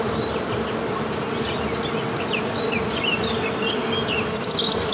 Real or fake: real